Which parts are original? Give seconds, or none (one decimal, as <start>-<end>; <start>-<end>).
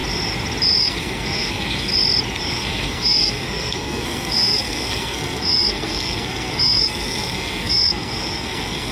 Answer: 0.0-0.8; 1.9-2.5